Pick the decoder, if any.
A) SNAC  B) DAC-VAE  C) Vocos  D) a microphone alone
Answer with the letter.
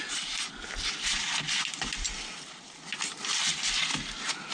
D